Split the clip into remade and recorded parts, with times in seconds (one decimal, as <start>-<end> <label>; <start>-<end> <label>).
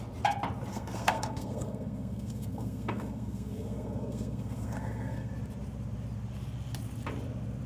0.0-0.7 recorded; 0.7-5.3 remade; 5.3-7.7 recorded